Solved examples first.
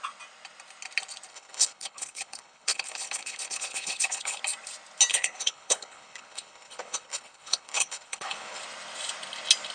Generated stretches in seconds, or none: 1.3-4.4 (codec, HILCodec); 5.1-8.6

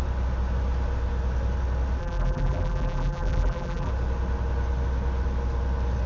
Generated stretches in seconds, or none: 2.0-3.9 (vocoder, BigVGAN v2)

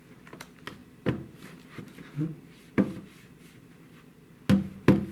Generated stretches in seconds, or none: 0.8-1.8 (vocoder, BigVGAN v2); 2.6-4.3